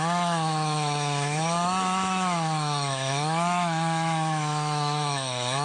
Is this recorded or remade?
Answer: remade